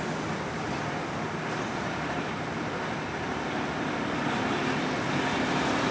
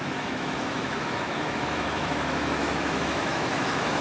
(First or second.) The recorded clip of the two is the first